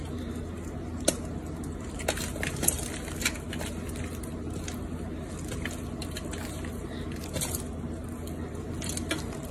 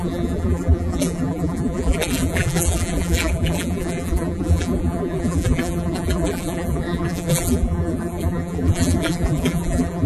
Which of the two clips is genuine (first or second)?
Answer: first